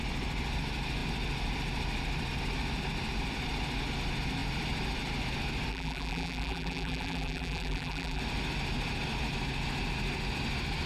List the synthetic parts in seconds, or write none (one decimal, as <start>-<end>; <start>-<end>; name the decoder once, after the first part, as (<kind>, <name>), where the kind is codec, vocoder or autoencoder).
5.7-8.2 (vocoder, BigVGAN v2)